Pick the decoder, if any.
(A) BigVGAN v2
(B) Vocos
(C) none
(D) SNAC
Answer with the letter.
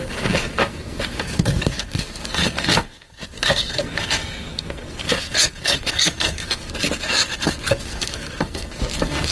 D